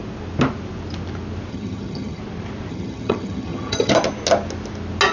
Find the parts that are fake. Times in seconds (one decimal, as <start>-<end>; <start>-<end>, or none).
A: 1.5-2.2; 2.7-3.9